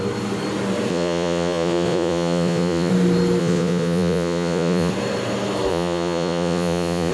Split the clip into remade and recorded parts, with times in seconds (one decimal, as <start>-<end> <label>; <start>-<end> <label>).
0.0-0.9 recorded; 0.9-2.9 remade; 2.9-3.4 recorded; 3.4-4.9 remade; 4.9-5.7 recorded; 5.7-7.1 remade